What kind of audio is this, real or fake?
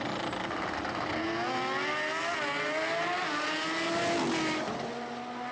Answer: real